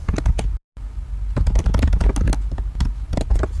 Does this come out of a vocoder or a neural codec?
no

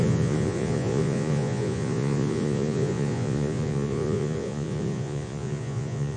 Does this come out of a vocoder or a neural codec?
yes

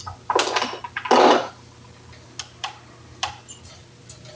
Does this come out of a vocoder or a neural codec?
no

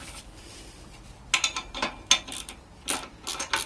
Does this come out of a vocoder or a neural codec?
no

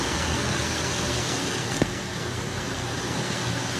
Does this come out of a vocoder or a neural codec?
yes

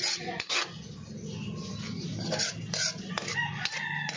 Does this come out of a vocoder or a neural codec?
no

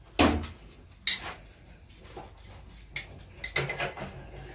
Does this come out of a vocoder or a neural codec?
no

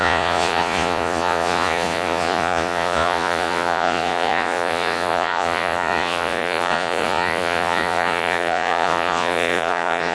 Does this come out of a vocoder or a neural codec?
yes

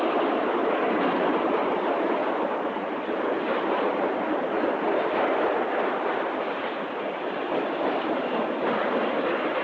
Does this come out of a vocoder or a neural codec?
no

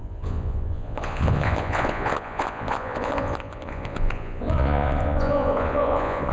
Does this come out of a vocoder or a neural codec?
yes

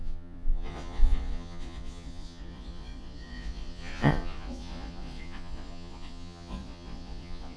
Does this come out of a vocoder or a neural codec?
yes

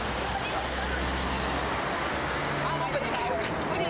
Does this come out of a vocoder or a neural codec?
no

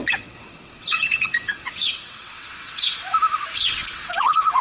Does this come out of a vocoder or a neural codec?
yes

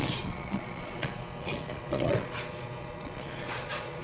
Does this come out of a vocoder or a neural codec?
yes